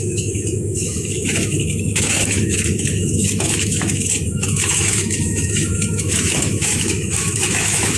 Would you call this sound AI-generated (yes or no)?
yes